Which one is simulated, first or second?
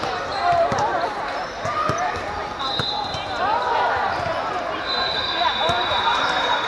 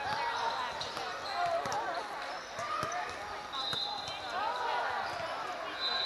first